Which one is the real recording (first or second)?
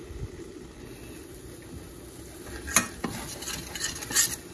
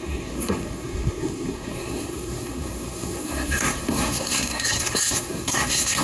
first